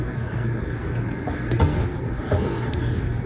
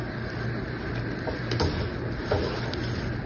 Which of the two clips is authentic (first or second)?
second